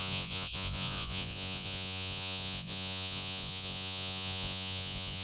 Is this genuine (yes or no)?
no